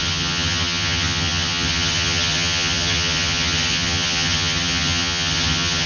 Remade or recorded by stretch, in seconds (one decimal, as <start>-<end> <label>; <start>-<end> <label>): 0.0-5.9 remade

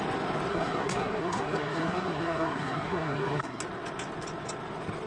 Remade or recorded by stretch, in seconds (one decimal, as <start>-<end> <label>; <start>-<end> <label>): 0.0-0.5 recorded; 0.5-3.6 remade; 3.6-5.1 recorded

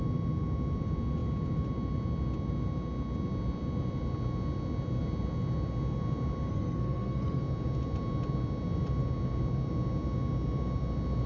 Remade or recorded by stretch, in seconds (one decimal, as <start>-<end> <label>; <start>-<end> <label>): 0.0-6.5 recorded; 6.5-7.4 remade; 7.4-11.3 recorded

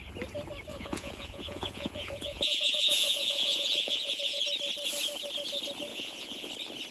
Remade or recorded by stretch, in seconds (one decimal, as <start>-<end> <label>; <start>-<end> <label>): 0.0-0.7 recorded; 0.7-4.4 remade; 4.4-5.9 recorded; 5.9-6.5 remade; 6.5-6.9 recorded